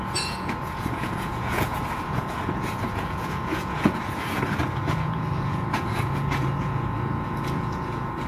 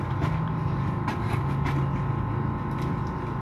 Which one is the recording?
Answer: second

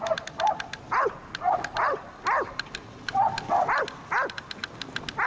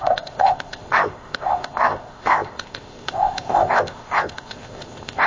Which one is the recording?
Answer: first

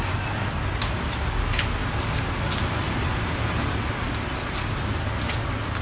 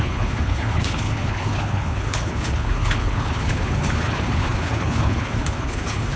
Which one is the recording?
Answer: first